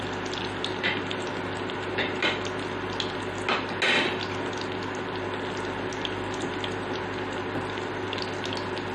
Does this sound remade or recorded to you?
recorded